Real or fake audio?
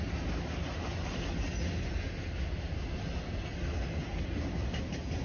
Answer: real